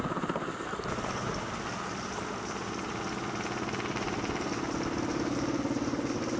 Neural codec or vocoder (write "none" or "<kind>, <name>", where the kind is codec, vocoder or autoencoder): none